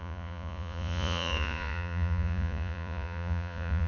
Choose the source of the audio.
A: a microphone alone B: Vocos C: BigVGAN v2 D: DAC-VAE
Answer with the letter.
B